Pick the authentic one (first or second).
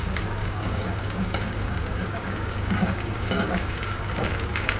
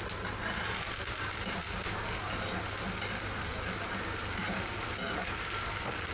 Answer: second